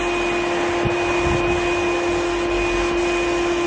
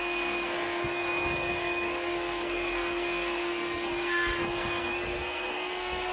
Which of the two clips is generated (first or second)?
second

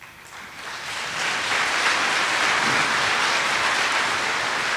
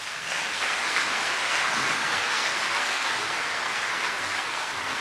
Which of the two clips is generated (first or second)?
second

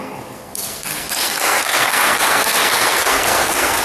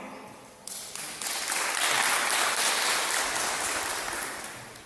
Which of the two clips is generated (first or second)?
first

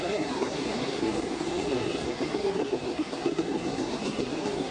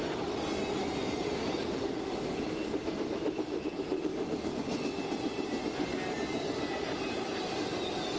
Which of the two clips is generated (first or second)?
first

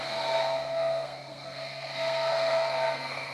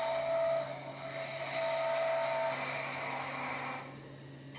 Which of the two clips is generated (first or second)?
first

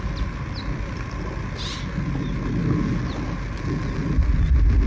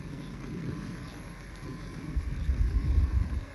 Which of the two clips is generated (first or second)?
second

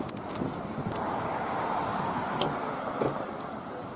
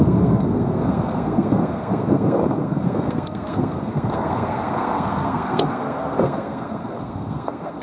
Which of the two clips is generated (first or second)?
second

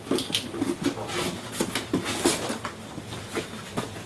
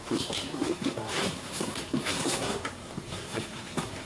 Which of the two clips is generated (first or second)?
second